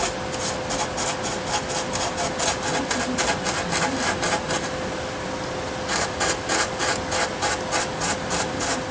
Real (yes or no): yes